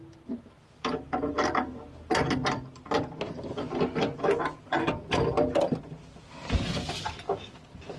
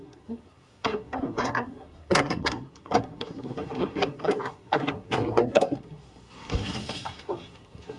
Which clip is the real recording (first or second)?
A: first